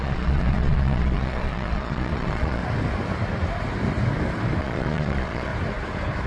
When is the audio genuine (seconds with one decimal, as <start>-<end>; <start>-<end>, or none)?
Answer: 2.6-4.6; 5.5-6.3